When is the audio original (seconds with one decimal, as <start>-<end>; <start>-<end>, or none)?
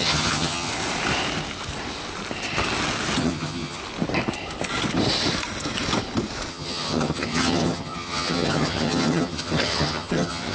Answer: 0.7-3.2; 3.8-6.5